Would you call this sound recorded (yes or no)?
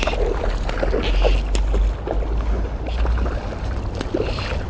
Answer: yes